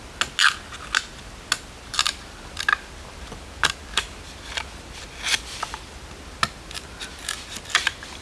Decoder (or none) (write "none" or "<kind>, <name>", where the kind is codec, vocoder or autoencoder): none